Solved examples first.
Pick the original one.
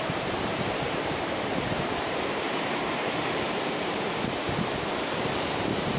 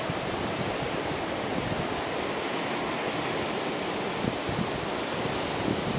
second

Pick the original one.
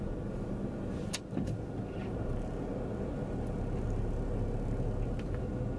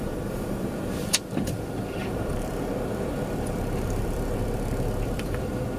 first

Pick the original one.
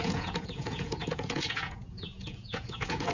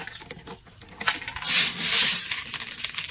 second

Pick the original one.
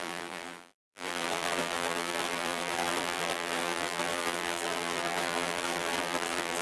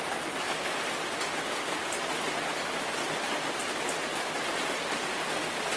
second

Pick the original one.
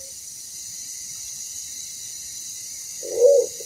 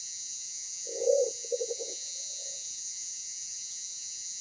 first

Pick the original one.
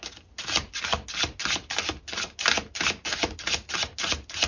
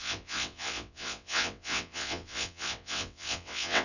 first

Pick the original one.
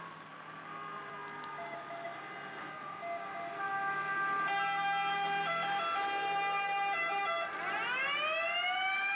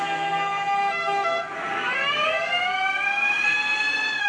first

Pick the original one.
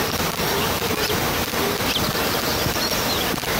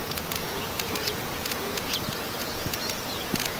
first